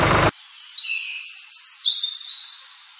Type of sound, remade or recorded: recorded